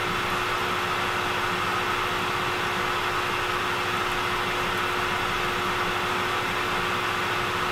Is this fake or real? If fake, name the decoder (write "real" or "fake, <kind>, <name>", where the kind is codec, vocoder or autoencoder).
real